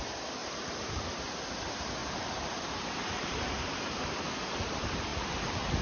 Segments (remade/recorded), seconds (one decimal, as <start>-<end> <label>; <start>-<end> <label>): 0.0-0.4 recorded; 0.4-1.2 remade; 1.2-2.0 recorded; 2.0-4.1 remade; 4.1-5.8 recorded